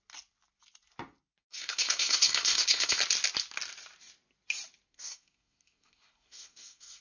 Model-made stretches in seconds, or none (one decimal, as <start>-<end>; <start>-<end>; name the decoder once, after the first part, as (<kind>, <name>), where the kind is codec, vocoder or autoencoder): 1.4-3.0 (codec, SNAC); 4.9-7.0